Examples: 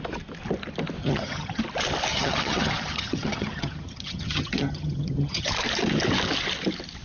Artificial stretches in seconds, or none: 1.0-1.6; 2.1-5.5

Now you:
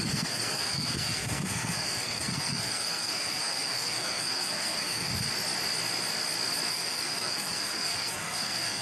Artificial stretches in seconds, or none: 0.0-5.1; 6.7-8.8

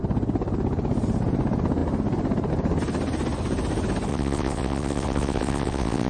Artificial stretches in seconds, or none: 4.1-6.1

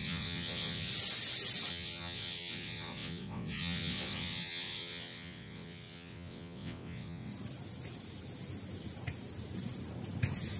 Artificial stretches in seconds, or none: 0.0-0.9; 1.7-7.3

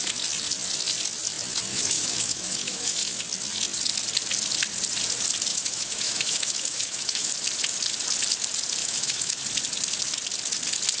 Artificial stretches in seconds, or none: 1.7-3.2; 5.5-7.3; 8.8-9.4

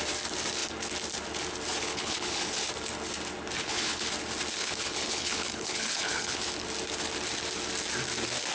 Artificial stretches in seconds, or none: 1.9-2.6; 3.6-4.1; 4.6-6.5

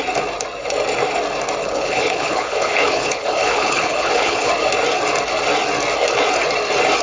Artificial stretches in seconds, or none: 1.6-4.5

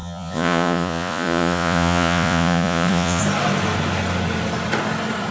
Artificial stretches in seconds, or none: 0.0-3.2